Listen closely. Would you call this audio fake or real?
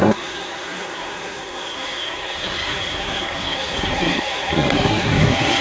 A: fake